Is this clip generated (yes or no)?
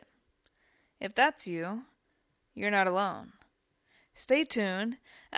no